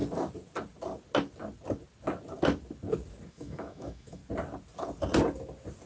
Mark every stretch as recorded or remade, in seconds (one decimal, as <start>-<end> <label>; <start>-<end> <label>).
0.0-3.3 recorded; 3.3-4.2 remade; 4.2-5.9 recorded